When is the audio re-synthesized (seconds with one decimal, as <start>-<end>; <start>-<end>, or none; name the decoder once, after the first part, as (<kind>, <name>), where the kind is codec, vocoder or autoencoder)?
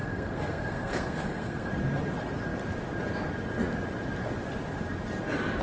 0.0-1.7 (codec, SNAC)